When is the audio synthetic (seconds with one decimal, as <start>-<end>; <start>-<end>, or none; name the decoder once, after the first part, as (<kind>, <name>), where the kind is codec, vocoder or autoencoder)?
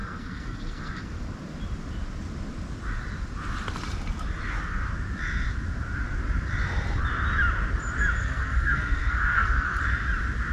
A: 0.0-1.2 (codec, SNAC); 8.2-9.8